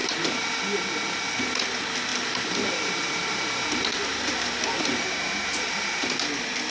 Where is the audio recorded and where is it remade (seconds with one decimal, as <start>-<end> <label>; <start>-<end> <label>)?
0.0-0.6 remade; 0.6-2.1 recorded; 2.1-6.1 remade; 6.1-6.7 recorded